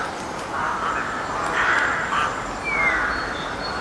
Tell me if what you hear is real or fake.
real